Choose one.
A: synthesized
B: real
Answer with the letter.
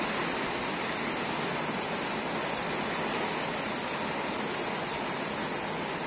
B